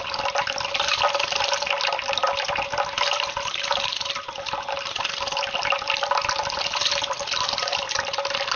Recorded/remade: recorded